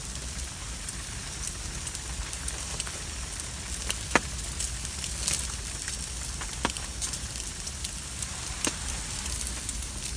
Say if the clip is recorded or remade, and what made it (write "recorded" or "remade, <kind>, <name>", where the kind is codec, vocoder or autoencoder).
recorded